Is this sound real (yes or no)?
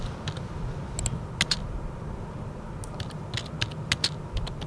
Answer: yes